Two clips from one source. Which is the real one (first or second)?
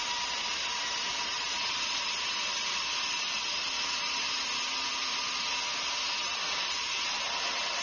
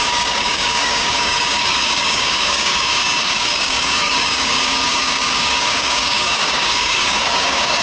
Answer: first